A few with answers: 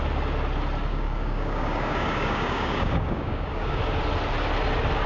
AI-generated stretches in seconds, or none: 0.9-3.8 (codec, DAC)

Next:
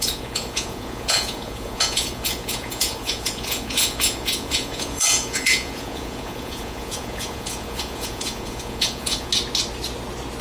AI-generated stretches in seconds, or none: 0.0-9.3 (vocoder, Vocos)

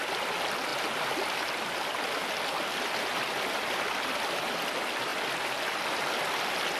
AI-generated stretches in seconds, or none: none

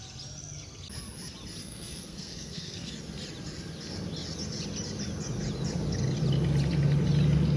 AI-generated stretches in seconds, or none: 1.6-2.9 (codec, SNAC)

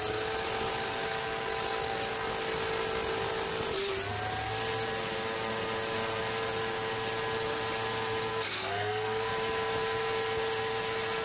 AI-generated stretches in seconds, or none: 8.3-9.3 (codec, SNAC)

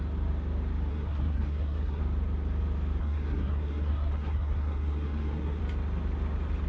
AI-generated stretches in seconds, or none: 0.9-2.0 (codec, SNAC); 3.0-5.6

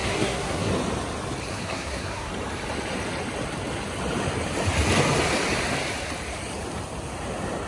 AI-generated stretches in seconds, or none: 0.0-0.7 (codec, SNAC); 1.5-2.3